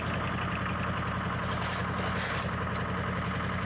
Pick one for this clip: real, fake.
real